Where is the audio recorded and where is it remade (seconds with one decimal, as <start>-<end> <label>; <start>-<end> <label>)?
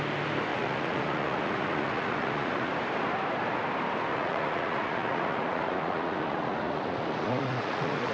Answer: 0.0-0.5 recorded; 0.5-2.7 remade; 2.7-4.1 recorded; 4.1-8.1 remade